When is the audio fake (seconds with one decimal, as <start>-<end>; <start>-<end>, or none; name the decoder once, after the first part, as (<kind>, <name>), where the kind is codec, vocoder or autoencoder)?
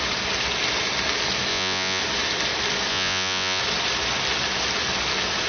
1.5-2.0 (vocoder, Vocos); 2.9-3.6